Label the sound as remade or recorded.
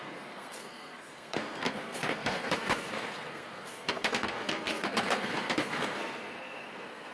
remade